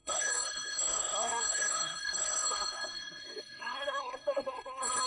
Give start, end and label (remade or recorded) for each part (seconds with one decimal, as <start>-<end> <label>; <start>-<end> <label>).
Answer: 0.0-5.1 remade